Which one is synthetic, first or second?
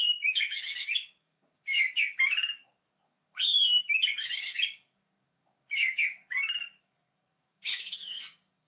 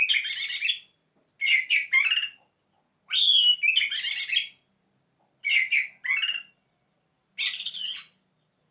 first